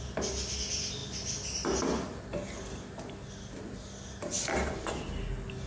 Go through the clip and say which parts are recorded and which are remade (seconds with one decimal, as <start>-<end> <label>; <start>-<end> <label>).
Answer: 0.0-5.7 recorded